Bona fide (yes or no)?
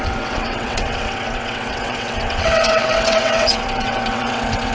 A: no